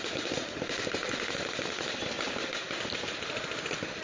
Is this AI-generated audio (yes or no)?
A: yes